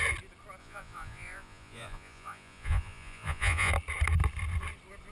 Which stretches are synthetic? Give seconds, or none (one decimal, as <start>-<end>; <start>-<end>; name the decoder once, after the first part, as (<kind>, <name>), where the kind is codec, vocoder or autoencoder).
0.6-3.7 (vocoder, Vocos)